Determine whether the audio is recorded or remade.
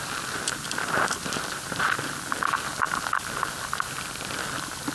recorded